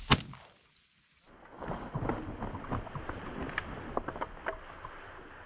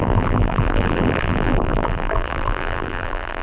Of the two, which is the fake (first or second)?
second